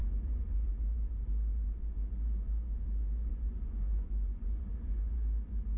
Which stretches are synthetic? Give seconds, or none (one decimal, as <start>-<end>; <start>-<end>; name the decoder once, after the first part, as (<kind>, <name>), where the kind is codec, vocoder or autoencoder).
0.0-0.7 (vocoder, Vocos); 3.3-5.1